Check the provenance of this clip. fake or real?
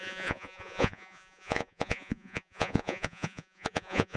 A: fake